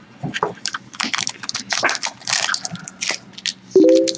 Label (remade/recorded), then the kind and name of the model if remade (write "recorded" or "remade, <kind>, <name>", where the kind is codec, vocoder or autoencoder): recorded